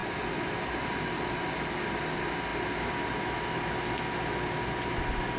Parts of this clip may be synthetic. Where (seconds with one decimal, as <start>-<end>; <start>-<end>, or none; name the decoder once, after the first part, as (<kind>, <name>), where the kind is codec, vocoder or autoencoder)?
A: 0.0-0.9 (vocoder, BigVGAN v2)

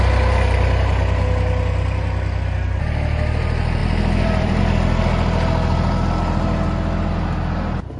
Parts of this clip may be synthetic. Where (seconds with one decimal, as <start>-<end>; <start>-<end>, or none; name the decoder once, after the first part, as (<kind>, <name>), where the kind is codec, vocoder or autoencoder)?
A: 3.8-4.6 (vocoder, BigVGAN v2)

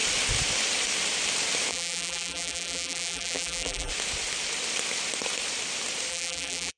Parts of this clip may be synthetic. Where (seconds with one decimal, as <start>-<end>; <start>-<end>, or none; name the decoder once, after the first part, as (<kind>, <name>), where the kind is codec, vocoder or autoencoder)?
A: 1.7-3.9 (vocoder, BigVGAN v2); 6.1-6.8

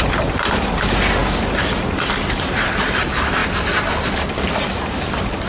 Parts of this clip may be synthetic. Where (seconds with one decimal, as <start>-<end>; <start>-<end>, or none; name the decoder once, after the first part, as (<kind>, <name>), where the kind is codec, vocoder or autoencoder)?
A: 0.0-1.2 (vocoder, BigVGAN v2); 2.1-3.4; 4.0-5.5

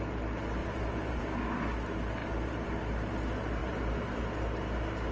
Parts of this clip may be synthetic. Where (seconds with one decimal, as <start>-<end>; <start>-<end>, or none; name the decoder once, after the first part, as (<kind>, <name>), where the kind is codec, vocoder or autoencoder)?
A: 0.6-1.2 (vocoder, BigVGAN v2); 2.2-2.8; 3.6-4.2